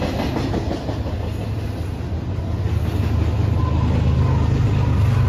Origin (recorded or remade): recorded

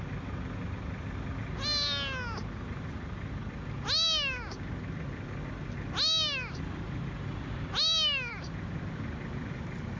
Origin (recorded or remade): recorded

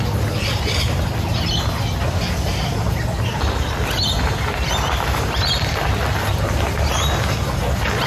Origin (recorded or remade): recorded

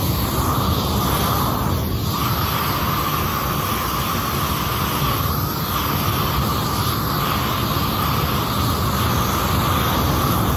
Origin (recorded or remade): recorded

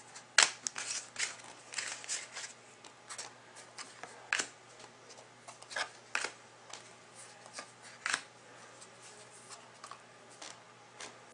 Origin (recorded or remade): recorded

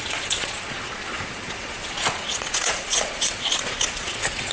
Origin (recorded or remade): remade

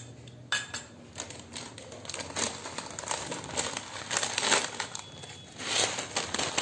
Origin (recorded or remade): recorded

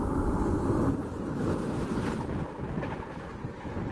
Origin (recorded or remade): recorded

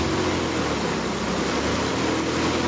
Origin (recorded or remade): recorded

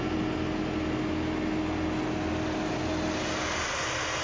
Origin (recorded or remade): recorded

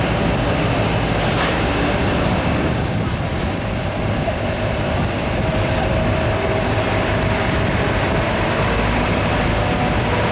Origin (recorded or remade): remade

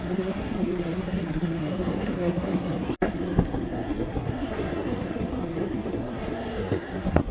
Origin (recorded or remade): remade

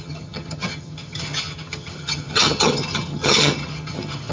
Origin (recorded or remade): remade